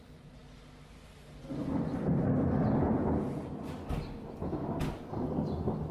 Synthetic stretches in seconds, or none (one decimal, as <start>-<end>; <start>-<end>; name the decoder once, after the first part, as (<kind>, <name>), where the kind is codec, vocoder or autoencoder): 4.6-5.1 (codec, DAC)